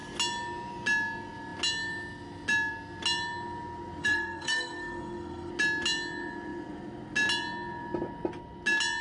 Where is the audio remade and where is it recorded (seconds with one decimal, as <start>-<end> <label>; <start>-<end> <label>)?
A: 0.0-4.0 recorded; 4.0-5.5 remade; 5.5-9.0 recorded